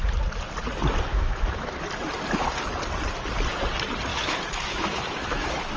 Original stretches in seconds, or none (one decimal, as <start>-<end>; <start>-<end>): 0.0-1.1; 1.7-4.1